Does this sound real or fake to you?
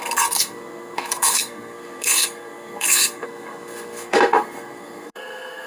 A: fake